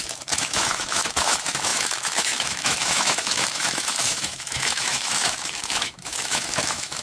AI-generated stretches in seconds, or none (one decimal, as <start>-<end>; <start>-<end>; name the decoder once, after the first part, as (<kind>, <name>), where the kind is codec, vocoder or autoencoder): 0.0-7.0 (autoencoder, DAC-VAE)

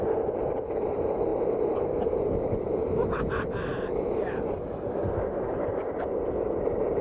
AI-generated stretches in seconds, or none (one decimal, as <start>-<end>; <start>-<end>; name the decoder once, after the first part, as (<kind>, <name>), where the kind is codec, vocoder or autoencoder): none

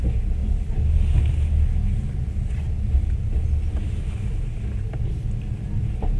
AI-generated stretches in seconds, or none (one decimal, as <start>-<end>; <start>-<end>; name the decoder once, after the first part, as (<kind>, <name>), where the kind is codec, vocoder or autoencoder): none

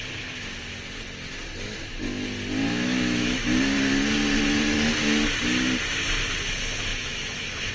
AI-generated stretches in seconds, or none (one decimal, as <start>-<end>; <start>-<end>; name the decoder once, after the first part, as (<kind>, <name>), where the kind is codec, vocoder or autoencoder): 2.7-3.4 (autoencoder, DAC-VAE); 6.9-7.7